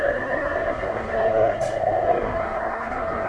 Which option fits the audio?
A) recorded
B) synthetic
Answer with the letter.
B